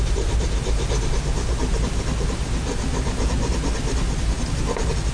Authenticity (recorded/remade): recorded